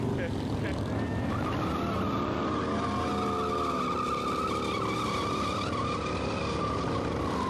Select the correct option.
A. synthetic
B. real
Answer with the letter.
B